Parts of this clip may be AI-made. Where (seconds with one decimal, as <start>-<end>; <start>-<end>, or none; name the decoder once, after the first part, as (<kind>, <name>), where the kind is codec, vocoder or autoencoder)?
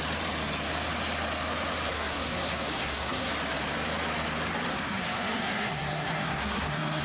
1.9-3.3 (codec, SNAC); 4.7-7.0